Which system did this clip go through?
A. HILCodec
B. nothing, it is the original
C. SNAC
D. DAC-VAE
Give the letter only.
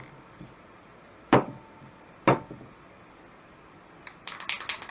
B